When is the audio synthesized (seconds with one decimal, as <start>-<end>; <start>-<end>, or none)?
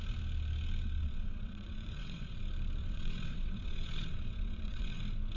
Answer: 1.0-2.4; 2.8-5.0